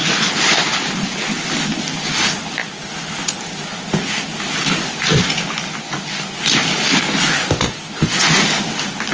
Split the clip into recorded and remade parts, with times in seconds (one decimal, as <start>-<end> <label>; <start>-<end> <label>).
0.0-9.1 recorded